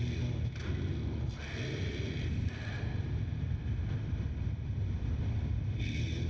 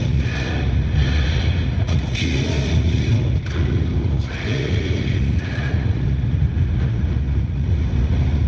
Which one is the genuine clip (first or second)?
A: first